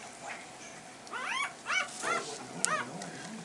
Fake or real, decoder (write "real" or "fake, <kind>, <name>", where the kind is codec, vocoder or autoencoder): real